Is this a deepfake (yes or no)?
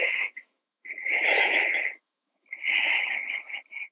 yes